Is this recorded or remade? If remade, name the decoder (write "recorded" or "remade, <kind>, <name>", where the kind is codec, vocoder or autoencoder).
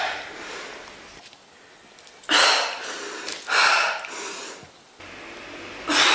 recorded